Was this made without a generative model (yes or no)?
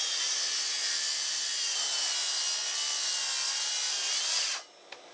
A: yes